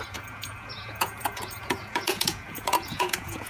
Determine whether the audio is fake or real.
fake